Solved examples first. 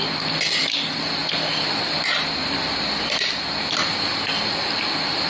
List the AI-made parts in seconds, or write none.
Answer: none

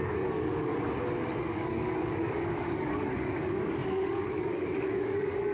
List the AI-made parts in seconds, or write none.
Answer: 0.0-0.7 (codec, DAC); 1.4-5.5

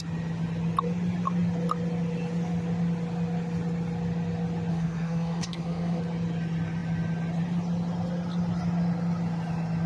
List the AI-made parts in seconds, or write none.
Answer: 4.7-6.0 (codec, SNAC)

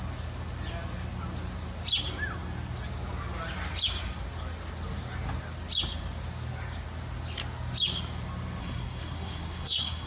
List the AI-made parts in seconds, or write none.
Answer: 8.6-10.1 (codec, SNAC)

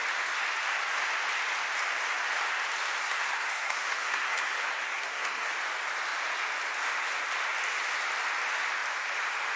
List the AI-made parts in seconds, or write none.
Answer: 3.0-5.5 (codec, SNAC)

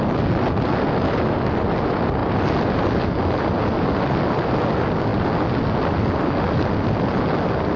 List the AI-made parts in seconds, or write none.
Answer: none